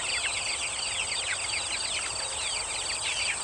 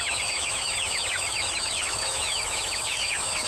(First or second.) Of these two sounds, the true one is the first